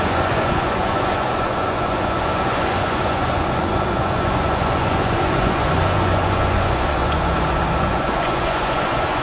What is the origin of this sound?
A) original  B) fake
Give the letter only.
B